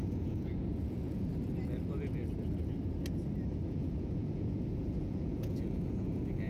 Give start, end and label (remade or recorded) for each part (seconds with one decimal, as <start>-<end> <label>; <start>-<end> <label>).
0.0-1.3 remade; 1.3-3.7 recorded; 3.7-6.5 remade